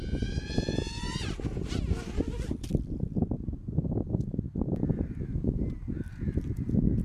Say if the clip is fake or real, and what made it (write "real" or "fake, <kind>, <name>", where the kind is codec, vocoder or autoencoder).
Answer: real